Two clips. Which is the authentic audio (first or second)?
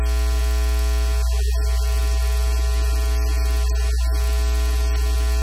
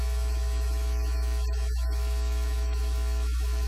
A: first